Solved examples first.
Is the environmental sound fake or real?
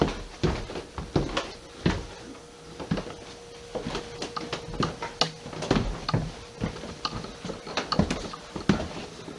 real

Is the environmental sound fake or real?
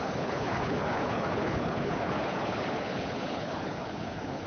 fake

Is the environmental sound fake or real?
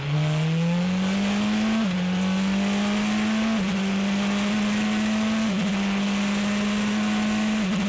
real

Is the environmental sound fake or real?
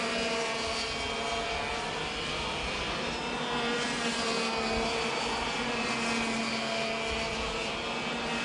real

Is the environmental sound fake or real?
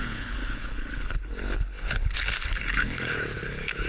fake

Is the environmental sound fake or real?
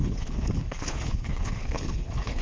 fake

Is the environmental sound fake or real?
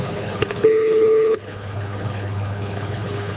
fake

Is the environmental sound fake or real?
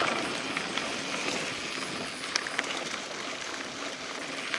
real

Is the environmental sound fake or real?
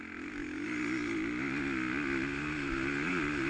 real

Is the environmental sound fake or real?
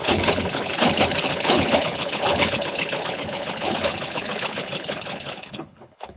fake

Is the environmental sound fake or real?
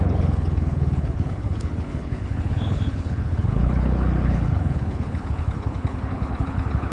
fake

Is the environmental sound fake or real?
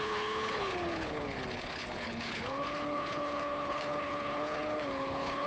fake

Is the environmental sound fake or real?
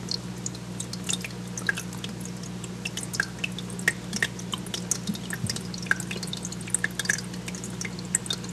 real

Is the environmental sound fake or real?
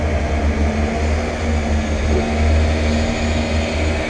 real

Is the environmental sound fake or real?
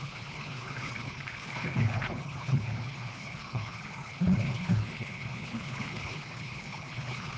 fake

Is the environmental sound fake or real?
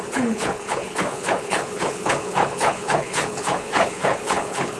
fake